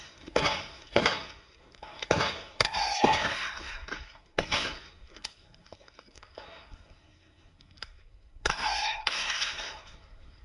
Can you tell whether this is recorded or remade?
remade